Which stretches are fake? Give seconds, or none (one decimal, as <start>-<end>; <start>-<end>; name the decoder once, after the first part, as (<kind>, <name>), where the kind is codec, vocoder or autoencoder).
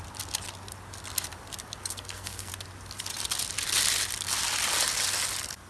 1.8-2.5 (codec, SNAC)